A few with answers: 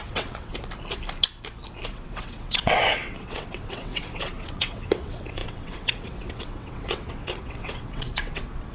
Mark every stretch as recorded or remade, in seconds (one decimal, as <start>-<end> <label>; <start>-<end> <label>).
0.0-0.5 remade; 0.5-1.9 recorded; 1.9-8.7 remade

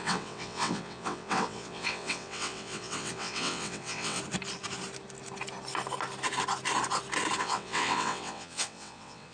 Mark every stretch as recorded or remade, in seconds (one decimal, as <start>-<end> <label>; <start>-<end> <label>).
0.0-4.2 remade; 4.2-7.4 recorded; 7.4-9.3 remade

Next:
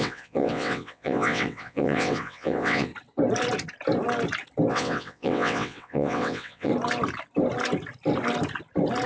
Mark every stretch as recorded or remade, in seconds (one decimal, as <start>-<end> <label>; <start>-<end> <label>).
0.0-2.9 remade; 2.9-4.7 recorded; 4.7-6.7 remade; 6.7-9.1 recorded

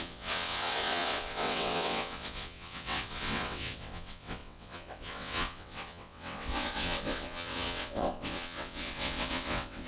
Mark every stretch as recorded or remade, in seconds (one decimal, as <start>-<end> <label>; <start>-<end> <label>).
0.0-9.9 remade